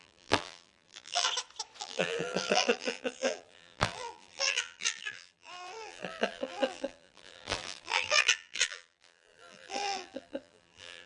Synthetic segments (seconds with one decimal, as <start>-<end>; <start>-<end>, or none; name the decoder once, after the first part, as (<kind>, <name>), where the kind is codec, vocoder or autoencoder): 0.0-1.3 (vocoder, BigVGAN v2); 1.8-11.1